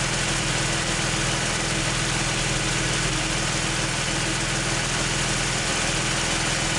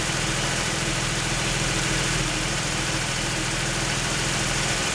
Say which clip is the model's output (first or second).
second